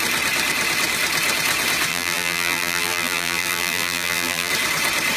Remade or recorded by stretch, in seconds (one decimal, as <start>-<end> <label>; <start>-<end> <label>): 0.0-1.9 recorded; 1.9-4.5 remade; 4.5-5.2 recorded